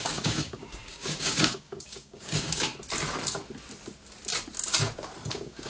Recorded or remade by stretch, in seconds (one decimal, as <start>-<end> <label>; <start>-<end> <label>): 0.0-2.7 remade; 2.7-5.3 recorded; 5.3-5.7 remade